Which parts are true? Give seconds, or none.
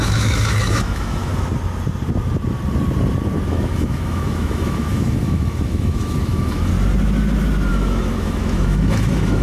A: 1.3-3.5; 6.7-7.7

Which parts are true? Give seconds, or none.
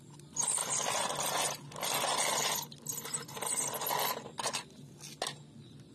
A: 0.0-5.9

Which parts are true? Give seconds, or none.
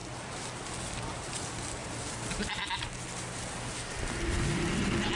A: 0.0-5.2